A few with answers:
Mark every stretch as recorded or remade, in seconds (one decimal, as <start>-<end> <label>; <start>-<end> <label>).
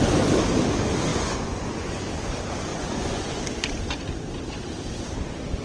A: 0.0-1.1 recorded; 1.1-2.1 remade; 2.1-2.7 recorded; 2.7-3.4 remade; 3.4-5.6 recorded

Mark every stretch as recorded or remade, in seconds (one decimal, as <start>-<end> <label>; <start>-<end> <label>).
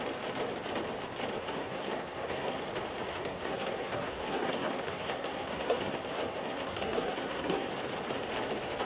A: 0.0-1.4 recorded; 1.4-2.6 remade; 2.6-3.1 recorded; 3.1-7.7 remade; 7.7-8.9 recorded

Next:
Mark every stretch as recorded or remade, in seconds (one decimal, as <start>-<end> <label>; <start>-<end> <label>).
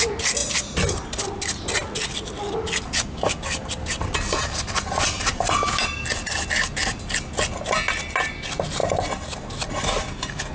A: 0.0-10.5 recorded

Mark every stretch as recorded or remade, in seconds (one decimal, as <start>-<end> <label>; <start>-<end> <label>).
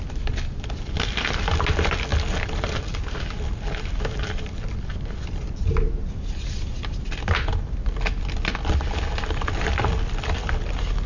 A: 0.0-11.1 recorded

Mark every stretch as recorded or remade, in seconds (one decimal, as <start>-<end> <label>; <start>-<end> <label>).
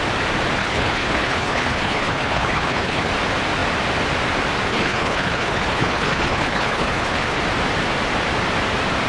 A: 0.0-0.6 recorded; 0.6-3.1 remade; 3.1-4.7 recorded; 4.7-7.4 remade; 7.4-9.1 recorded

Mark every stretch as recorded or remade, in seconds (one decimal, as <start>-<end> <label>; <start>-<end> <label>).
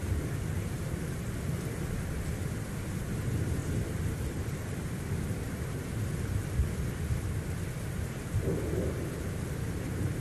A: 0.0-3.6 recorded; 3.6-5.0 remade; 5.0-10.2 recorded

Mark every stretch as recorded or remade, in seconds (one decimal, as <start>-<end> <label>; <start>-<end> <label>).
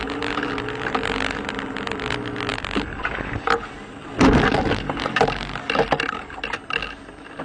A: 0.0-7.4 recorded